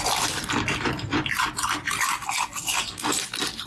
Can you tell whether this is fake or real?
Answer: real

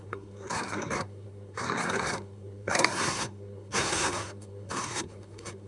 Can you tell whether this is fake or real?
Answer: fake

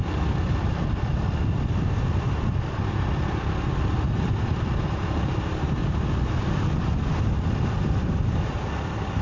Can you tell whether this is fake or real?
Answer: real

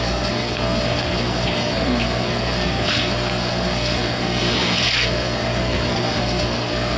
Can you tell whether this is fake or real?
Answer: fake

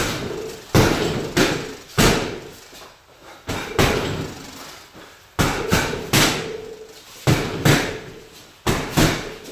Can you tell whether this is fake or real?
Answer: real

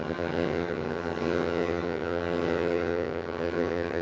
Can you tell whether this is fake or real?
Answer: fake